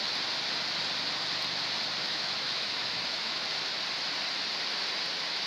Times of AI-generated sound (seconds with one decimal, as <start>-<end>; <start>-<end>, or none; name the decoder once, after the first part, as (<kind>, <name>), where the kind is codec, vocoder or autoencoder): 2.0-3.4 (autoencoder, DAC-VAE)